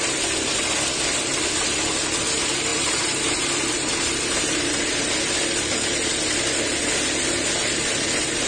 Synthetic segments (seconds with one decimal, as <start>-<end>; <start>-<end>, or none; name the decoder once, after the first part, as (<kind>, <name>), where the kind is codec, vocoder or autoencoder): 2.7-5.1 (vocoder, BigVGAN v2)